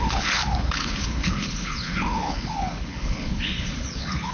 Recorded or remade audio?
remade